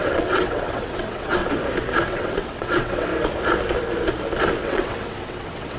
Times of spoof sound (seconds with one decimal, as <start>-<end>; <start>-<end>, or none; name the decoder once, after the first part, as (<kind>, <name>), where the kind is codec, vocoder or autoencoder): 0.0-1.4 (vocoder, WaveNeXt); 2.1-3.1; 4.6-5.8